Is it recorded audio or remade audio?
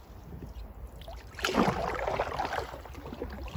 recorded